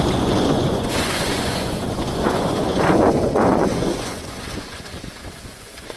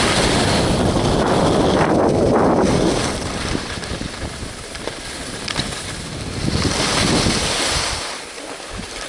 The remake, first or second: first